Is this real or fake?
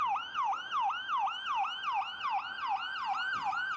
real